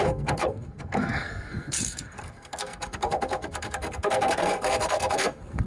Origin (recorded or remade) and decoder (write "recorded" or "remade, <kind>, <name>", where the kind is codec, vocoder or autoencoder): remade, codec, SNAC